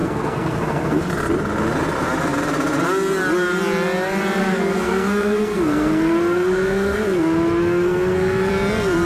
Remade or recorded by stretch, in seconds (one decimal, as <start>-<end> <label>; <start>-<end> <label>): 0.0-1.0 remade; 1.0-4.4 recorded; 4.4-8.5 remade; 8.5-9.0 recorded